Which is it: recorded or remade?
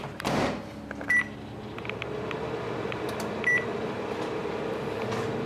recorded